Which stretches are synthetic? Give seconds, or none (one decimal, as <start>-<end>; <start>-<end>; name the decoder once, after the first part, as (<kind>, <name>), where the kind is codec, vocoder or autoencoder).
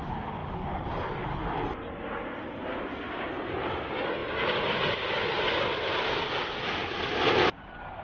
none